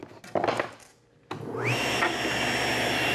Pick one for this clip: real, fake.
real